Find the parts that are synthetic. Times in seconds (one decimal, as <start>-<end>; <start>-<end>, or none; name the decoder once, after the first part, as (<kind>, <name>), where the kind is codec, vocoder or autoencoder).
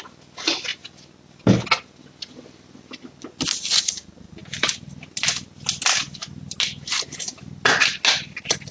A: none